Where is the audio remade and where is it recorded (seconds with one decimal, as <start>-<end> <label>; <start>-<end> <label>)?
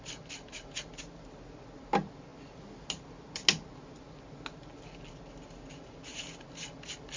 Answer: 0.0-7.2 recorded